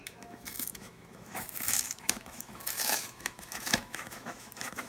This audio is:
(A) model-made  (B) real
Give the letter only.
A